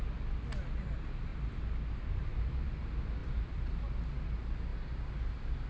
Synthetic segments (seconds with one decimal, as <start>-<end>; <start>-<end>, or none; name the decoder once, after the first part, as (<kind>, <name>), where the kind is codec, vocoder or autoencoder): 1.3-2.3 (vocoder, BigVGAN v2); 3.2-3.8